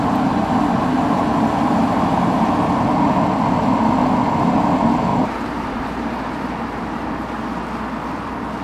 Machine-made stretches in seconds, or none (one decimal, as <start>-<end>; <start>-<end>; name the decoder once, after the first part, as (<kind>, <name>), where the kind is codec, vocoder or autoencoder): 5.1-7.1 (vocoder, BigVGAN v2)